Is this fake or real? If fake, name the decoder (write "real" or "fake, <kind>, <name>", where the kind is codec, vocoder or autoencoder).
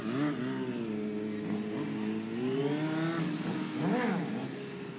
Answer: real